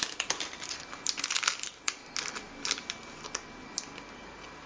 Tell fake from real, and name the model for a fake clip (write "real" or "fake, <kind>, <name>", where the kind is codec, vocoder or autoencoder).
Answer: real